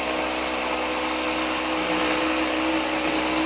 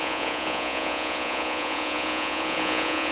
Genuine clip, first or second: first